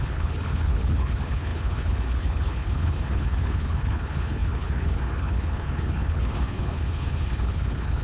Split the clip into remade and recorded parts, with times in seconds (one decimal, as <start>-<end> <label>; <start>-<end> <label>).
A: 0.0-8.0 remade